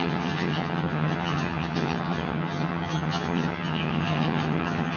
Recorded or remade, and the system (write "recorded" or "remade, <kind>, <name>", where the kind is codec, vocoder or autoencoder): remade, vocoder, HiFi-GAN